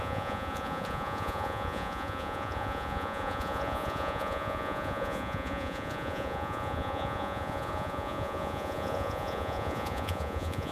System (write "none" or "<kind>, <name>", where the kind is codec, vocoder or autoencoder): vocoder, Vocos